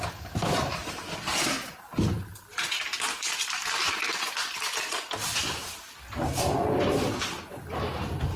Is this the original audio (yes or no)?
yes